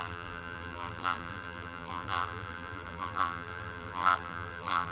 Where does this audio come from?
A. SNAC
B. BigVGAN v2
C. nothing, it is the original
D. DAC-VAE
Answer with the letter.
B